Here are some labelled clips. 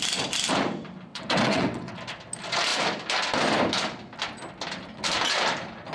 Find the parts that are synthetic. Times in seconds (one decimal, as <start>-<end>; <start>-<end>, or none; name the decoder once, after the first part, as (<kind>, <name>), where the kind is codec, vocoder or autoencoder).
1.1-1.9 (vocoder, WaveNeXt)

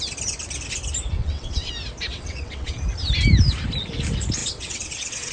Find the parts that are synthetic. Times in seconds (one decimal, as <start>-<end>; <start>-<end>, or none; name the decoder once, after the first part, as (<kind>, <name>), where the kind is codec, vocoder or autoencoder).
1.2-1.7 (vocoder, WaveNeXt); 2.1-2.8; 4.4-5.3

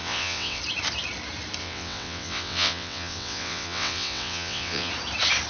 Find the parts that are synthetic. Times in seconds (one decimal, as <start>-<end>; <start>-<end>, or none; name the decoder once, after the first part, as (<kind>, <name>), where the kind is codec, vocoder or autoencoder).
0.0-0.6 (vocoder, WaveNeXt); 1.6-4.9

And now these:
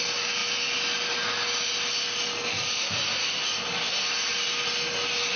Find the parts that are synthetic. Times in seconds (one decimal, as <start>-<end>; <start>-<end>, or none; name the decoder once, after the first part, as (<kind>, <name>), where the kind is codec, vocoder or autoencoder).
none

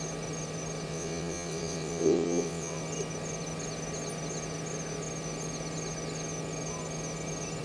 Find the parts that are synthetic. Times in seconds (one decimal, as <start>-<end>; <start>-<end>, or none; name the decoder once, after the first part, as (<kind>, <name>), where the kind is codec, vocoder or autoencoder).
0.9-2.8 (vocoder, WaveNeXt)

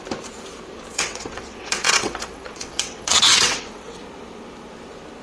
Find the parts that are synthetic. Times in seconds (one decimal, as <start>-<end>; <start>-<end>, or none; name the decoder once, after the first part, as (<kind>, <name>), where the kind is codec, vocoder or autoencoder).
0.9-4.0 (vocoder, WaveNeXt)

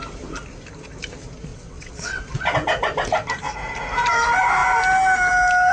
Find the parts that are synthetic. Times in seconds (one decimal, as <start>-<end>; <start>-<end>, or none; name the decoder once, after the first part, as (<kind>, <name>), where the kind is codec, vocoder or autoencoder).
1.5-2.2 (vocoder, WaveNeXt)